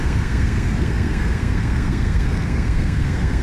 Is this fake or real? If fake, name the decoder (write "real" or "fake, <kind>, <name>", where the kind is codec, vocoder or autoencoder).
fake, codec, SNAC